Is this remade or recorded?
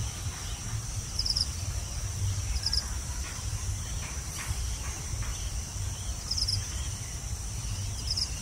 recorded